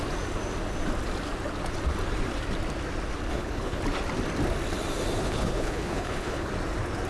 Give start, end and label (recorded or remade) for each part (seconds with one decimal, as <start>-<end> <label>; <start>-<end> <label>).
0.0-3.3 recorded; 3.3-3.8 remade; 3.8-5.2 recorded; 5.2-6.5 remade; 6.5-7.1 recorded